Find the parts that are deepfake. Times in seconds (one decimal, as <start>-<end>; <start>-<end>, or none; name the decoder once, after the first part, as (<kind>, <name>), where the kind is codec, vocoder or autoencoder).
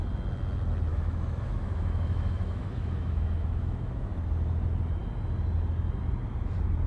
0.9-4.2 (autoencoder, DAC-VAE)